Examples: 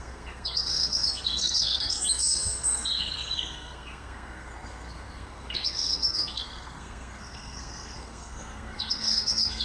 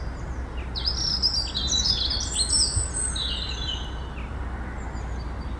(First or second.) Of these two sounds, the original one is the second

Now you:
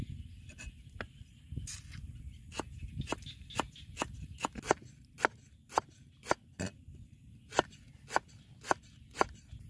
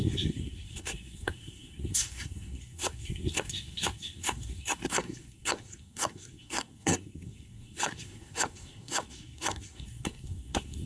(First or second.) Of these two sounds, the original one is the first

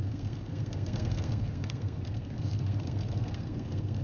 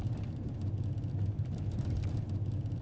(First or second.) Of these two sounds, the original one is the second